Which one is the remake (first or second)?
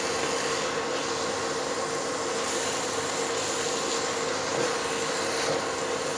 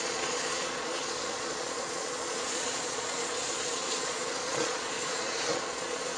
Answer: second